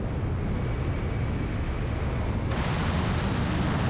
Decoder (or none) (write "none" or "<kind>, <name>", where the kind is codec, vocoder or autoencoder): none